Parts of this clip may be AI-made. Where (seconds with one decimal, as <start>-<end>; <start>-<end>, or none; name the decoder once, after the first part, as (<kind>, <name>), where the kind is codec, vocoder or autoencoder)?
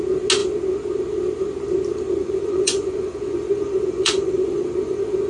2.2-5.3 (vocoder, Vocos)